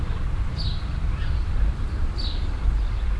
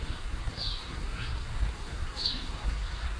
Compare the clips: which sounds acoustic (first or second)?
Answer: first